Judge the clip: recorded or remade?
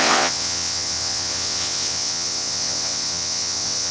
remade